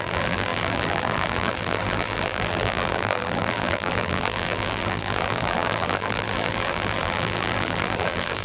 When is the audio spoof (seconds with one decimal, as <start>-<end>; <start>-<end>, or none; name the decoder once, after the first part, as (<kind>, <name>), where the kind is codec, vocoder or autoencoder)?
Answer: 0.0-8.4 (vocoder, BigVGAN v2)